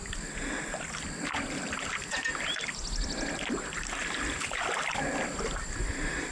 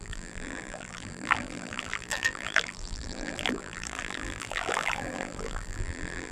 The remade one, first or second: second